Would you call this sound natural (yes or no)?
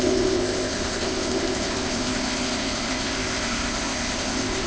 no